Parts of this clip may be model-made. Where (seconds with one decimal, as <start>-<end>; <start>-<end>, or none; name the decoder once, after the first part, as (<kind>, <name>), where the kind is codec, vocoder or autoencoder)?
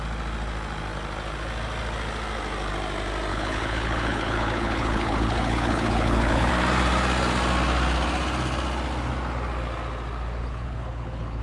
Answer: 3.3-6.5 (codec, HILCodec); 10.4-11.4